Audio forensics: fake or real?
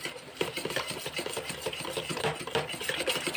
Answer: fake